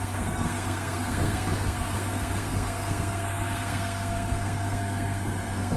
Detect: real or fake fake